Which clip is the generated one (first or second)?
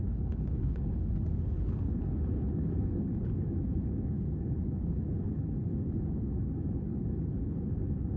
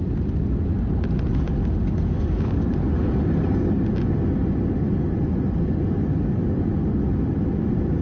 first